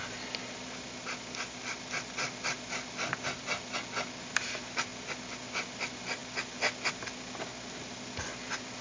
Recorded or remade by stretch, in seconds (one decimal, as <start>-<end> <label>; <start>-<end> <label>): 0.0-8.8 recorded